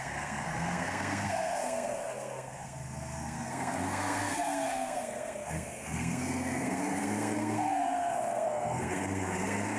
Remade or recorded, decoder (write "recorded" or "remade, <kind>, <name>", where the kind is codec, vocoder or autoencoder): remade, codec, SNAC